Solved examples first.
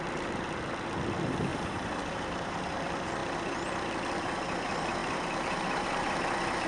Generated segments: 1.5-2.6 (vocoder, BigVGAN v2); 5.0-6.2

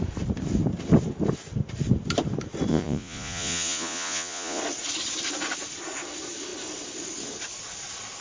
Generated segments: 2.7-4.6 (vocoder, Vocos)

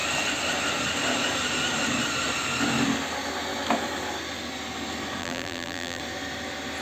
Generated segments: 5.2-6.0 (vocoder, BigVGAN v2)

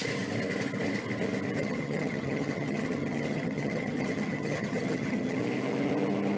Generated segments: 1.6-5.4 (vocoder, HiFi-GAN)

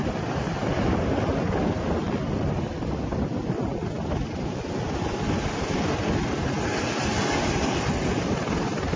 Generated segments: none

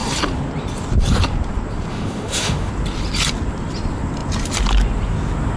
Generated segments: 1.9-2.7 (autoencoder, DAC-VAE)

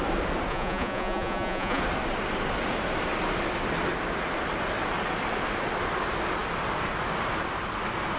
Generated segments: 0.5-1.8 (vocoder, Vocos)